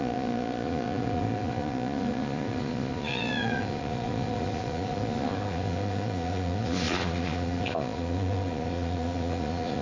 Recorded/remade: remade